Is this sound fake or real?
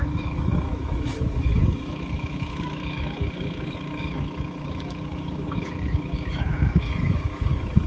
fake